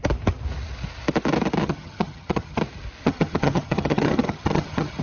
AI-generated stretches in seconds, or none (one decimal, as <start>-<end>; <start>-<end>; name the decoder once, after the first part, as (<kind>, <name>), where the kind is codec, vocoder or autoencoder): 1.6-2.6 (vocoder, HiFi-GAN); 3.0-5.0